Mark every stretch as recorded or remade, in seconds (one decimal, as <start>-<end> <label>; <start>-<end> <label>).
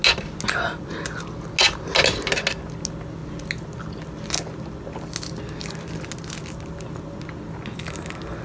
0.0-8.4 recorded